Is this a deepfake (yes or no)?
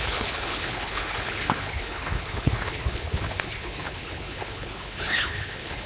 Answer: yes